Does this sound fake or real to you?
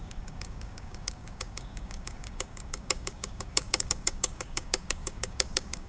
fake